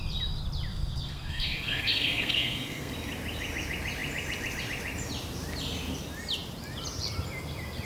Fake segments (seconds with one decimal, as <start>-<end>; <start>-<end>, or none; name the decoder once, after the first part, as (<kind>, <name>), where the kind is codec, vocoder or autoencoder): 0.7-2.9 (codec, SNAC)